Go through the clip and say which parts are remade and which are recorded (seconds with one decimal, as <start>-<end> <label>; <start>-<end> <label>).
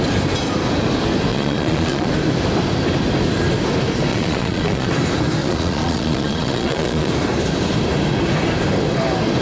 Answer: 0.0-1.3 recorded; 1.3-2.1 remade; 2.1-4.1 recorded; 4.1-4.9 remade; 4.9-5.4 recorded; 5.4-7.1 remade; 7.1-9.4 recorded